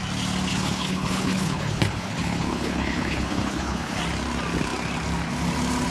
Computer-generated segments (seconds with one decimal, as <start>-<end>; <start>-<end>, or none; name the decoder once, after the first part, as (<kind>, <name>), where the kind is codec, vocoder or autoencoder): 0.5-4.0 (codec, HILCodec)